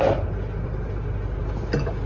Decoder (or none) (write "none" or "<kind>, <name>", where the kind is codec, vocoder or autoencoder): none